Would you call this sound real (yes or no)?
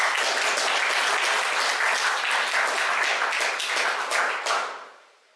yes